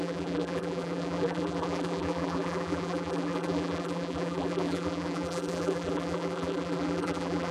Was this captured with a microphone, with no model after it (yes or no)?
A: no